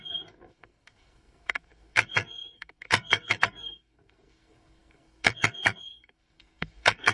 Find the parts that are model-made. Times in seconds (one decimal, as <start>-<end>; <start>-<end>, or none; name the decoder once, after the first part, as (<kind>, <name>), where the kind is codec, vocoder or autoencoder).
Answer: 0.0-7.1 (codec, SNAC)